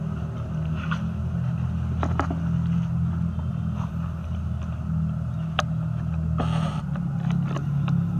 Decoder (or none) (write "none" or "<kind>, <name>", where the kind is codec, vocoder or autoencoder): none